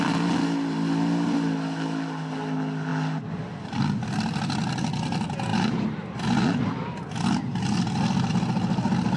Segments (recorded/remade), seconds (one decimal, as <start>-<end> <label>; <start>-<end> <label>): 0.0-9.2 recorded